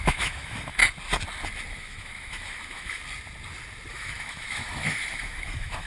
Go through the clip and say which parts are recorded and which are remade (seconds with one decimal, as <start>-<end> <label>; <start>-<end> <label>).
0.0-0.8 remade; 0.8-1.7 recorded; 1.7-3.0 remade; 3.0-3.9 recorded; 3.9-5.9 remade